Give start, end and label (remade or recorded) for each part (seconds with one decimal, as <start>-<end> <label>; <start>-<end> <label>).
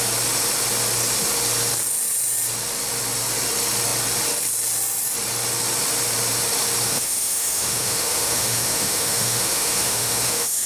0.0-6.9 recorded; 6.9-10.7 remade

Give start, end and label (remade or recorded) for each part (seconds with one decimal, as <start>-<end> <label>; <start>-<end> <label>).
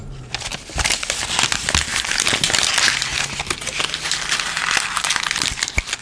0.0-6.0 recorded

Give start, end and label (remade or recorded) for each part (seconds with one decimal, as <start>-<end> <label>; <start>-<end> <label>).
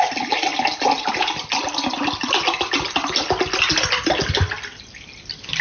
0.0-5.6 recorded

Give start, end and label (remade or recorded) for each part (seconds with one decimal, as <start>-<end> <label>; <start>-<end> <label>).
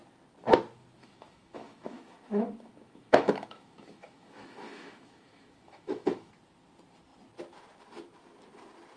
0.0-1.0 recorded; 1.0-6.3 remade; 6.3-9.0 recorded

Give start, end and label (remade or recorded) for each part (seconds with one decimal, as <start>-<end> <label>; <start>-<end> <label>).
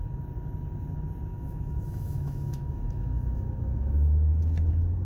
0.0-1.3 recorded; 1.3-4.3 remade; 4.3-5.0 recorded